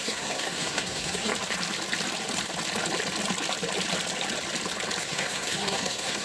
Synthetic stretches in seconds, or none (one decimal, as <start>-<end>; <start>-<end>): 0.0-1.3; 5.0-6.2